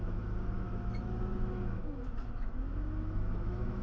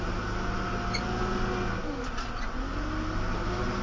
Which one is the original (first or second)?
second